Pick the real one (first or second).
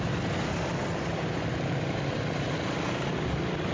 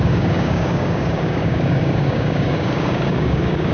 first